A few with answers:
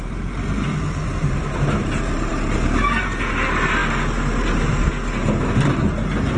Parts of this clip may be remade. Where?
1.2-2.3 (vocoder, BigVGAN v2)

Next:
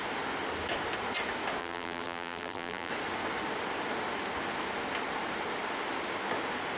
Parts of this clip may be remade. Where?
1.6-2.9 (vocoder, BigVGAN v2)

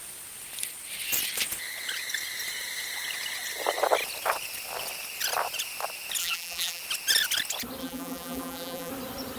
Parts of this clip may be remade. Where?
6.2-6.8 (vocoder, BigVGAN v2); 7.8-8.9

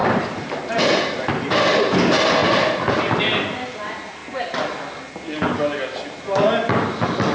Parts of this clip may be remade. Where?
0.0-1.3 (vocoder, BigVGAN v2)

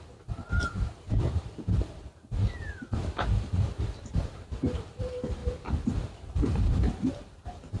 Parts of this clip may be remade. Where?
0.0-3.0 (vocoder, BigVGAN v2); 3.8-5.4; 6.0-7.8

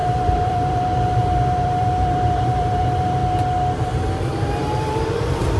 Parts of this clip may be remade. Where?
0.0-3.2 (vocoder, BigVGAN v2); 4.6-5.6

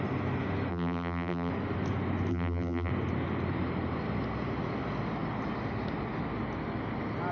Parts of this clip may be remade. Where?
0.7-1.5 (vocoder, BigVGAN v2); 2.3-2.9